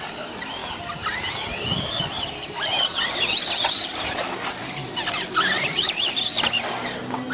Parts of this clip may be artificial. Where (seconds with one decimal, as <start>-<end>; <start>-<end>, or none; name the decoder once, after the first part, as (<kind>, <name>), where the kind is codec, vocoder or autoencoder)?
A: none